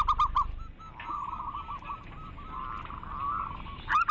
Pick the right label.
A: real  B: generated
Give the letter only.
A